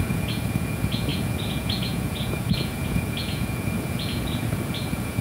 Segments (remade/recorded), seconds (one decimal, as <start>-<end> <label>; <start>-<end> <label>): 0.0-5.2 remade